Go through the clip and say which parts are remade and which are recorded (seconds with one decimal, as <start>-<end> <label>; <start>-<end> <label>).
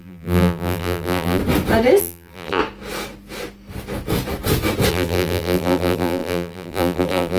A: 0.0-1.4 remade; 1.4-2.0 recorded; 2.0-2.6 remade; 2.6-4.9 recorded; 4.9-7.4 remade